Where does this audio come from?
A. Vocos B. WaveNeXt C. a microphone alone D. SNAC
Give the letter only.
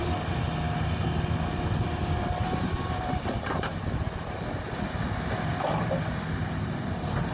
C